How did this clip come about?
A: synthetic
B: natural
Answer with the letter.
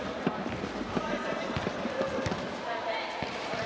B